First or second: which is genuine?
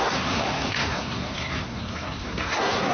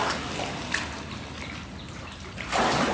second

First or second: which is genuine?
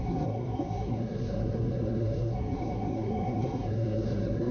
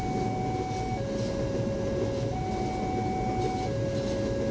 second